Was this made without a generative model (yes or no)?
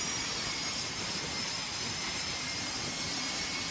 yes